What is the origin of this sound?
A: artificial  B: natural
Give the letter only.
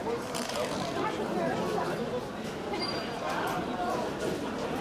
B